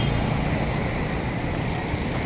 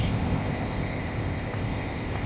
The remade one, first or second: second